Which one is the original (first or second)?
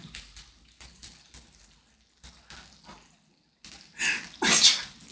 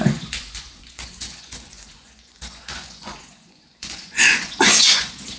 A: first